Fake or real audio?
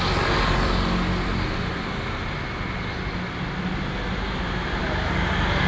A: real